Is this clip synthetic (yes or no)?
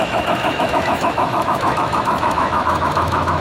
yes